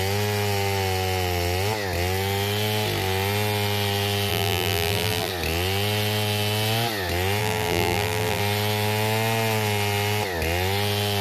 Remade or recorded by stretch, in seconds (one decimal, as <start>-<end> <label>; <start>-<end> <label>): 0.0-4.3 recorded; 4.3-5.3 remade; 5.3-7.4 recorded; 7.4-8.4 remade; 8.4-11.2 recorded